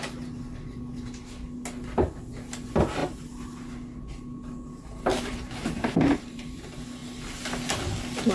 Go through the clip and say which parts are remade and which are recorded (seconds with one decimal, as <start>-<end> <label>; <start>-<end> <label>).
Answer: 0.0-5.1 recorded; 5.1-6.6 remade; 6.6-8.3 recorded